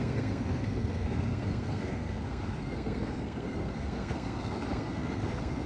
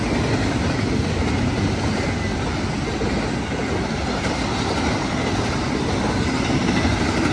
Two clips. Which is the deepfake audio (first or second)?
first